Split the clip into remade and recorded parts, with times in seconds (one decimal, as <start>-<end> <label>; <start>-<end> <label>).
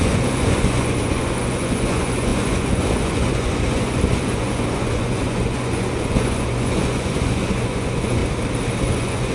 0.0-8.2 remade; 8.2-8.8 recorded; 8.8-9.3 remade